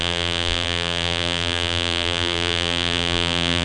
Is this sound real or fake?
fake